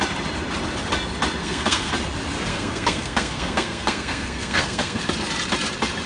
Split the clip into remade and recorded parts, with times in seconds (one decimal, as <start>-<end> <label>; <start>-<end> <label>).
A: 0.0-1.4 recorded; 1.4-1.9 remade; 1.9-2.5 recorded; 2.5-5.1 remade; 5.1-6.1 recorded